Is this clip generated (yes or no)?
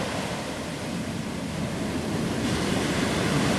no